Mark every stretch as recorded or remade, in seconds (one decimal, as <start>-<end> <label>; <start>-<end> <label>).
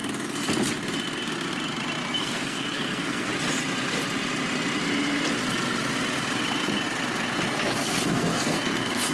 0.0-2.2 recorded; 2.2-3.3 remade; 3.3-7.6 recorded; 7.6-9.1 remade